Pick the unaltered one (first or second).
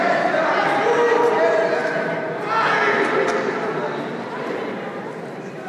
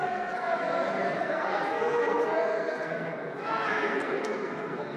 first